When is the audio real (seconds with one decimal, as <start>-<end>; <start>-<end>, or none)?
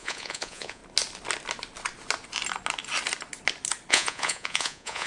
0.8-3.9